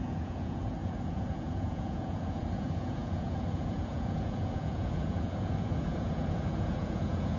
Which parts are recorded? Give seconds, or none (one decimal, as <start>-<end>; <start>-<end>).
none